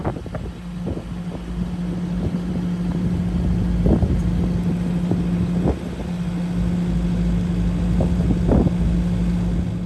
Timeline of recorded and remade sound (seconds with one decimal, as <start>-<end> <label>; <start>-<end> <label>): 0.0-9.9 recorded